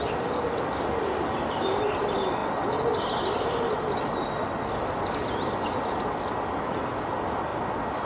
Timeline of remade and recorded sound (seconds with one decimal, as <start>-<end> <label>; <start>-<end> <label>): 0.0-8.1 recorded